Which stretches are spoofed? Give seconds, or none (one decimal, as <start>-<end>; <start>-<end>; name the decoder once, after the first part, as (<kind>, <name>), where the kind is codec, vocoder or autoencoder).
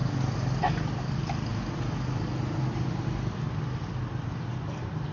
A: none